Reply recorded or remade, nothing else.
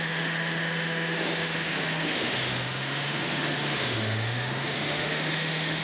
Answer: remade